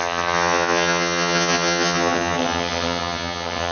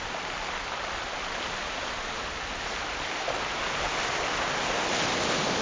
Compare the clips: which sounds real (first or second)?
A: second